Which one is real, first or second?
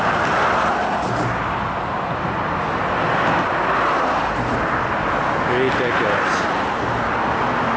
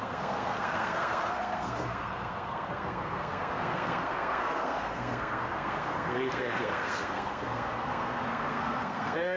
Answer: first